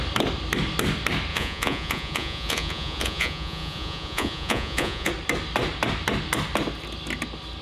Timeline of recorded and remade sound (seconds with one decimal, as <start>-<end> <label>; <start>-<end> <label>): 0.0-1.3 recorded; 1.3-5.1 remade; 5.1-7.6 recorded